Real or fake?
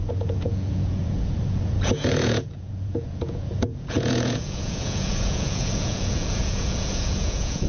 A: fake